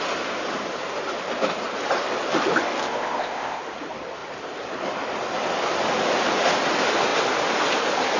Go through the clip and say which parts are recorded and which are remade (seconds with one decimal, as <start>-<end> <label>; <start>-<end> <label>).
0.0-2.8 recorded; 2.8-3.6 remade; 3.6-8.2 recorded